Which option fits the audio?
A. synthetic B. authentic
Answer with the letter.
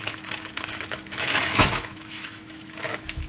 A